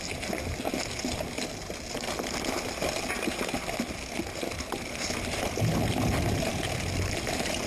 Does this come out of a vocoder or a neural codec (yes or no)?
no